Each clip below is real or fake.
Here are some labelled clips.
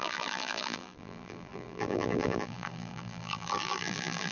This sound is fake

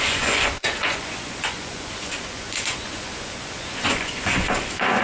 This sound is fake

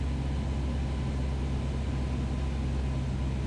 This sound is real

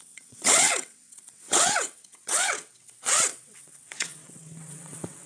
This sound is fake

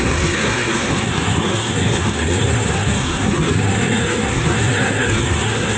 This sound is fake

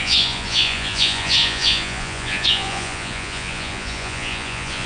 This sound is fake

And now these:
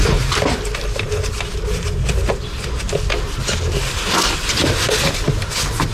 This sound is real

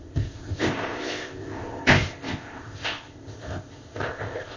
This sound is fake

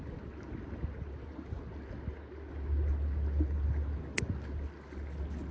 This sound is real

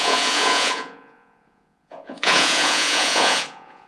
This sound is fake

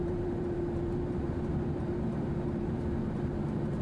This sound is fake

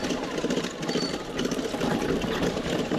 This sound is real